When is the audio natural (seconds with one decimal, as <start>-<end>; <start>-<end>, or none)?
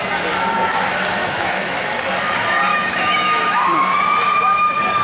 0.0-1.2; 1.8-2.7; 4.0-5.0